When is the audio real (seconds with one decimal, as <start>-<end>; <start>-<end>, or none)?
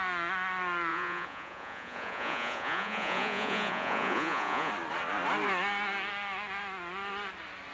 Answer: 0.0-0.9; 4.7-7.7